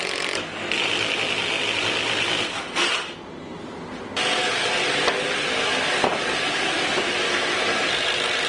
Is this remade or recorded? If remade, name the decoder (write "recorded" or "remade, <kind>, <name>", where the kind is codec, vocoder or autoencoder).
recorded